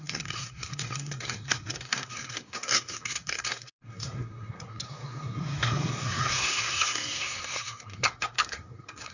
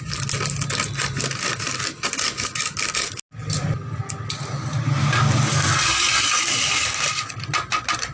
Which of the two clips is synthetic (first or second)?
first